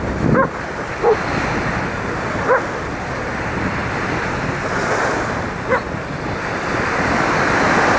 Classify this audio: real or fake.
real